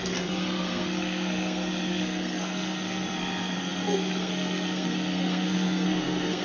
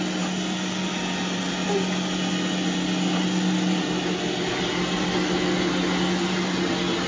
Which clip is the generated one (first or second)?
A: first